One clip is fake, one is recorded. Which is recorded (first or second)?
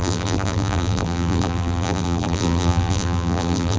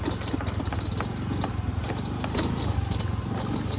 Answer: second